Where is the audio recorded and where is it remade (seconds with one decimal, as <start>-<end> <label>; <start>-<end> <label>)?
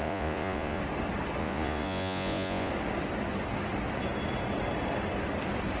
0.0-0.8 remade; 0.8-1.4 recorded; 1.4-2.7 remade; 2.7-5.8 recorded